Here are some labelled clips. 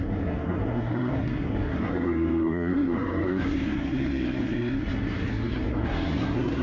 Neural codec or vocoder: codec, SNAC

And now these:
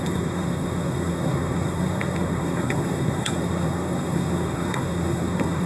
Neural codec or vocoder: codec, SNAC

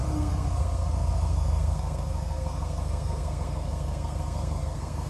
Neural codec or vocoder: codec, SNAC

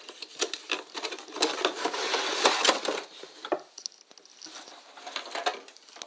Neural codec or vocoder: none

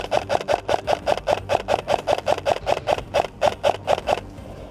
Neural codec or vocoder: none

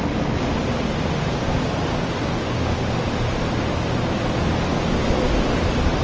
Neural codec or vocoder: none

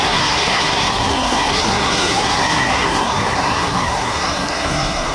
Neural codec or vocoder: codec, SNAC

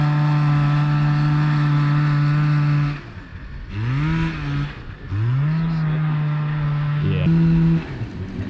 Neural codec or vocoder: none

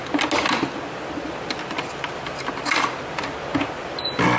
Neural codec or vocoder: none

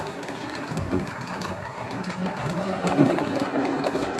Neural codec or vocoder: codec, SNAC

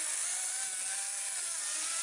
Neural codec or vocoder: none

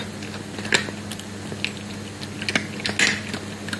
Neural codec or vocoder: none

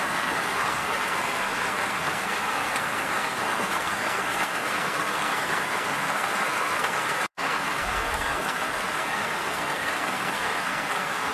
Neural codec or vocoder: codec, SNAC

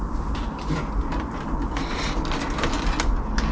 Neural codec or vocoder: none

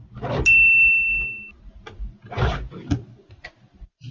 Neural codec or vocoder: none